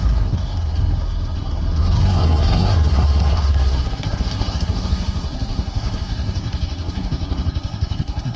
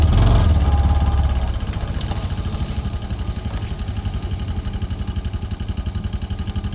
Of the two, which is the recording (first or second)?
second